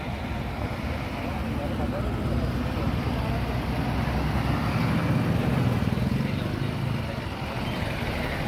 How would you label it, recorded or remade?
recorded